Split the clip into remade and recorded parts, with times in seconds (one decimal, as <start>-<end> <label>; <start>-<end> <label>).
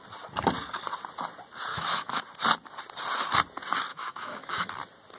0.0-1.7 recorded; 1.7-2.2 remade; 2.2-3.9 recorded; 3.9-4.7 remade; 4.7-5.2 recorded